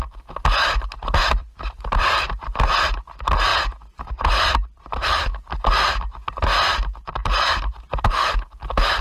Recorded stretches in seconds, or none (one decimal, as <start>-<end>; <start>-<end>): 0.0-1.4; 2.6-7.2; 7.7-9.0